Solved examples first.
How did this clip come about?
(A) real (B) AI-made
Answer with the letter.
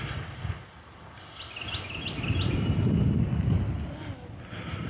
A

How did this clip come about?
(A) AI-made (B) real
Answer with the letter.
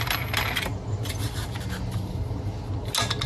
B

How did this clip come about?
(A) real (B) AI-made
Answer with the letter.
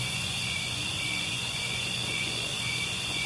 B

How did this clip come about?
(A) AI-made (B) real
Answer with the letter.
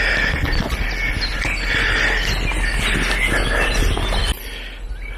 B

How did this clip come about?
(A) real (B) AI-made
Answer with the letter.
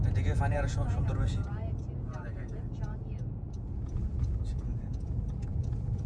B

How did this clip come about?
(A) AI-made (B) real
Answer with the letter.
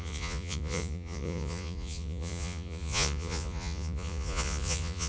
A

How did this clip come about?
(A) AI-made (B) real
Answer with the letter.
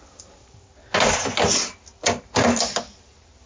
B